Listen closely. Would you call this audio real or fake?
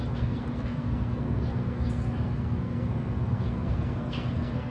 fake